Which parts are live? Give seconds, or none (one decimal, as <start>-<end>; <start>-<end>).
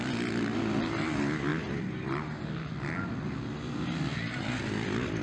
0.0-5.2